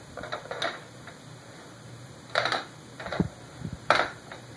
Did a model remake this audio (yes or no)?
yes